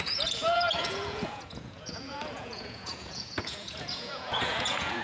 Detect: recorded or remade remade